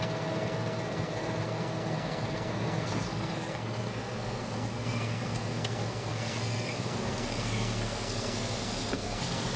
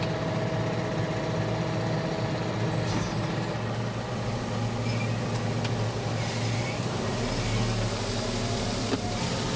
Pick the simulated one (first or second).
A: first